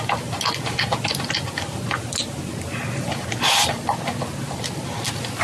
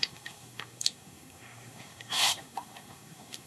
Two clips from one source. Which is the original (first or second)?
first